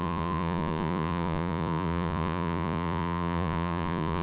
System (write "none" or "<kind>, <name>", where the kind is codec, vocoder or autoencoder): vocoder, Vocos